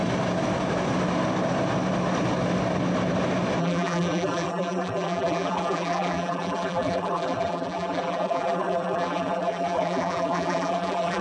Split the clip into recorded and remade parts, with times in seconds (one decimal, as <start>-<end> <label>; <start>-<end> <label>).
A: 0.0-3.6 recorded; 3.6-11.2 remade